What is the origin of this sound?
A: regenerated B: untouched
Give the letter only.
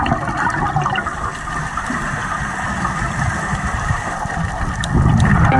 B